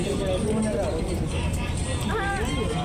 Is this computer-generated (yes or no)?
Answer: no